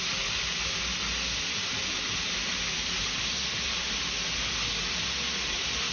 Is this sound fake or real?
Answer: real